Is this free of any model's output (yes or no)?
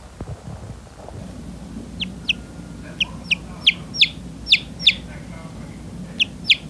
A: yes